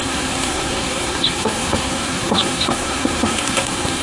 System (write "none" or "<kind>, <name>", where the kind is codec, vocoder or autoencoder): codec, SNAC